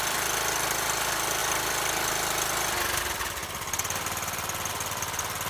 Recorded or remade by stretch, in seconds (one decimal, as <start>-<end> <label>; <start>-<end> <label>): 0.0-1.4 remade; 1.4-3.0 recorded; 3.0-3.4 remade; 3.4-4.7 recorded; 4.7-5.5 remade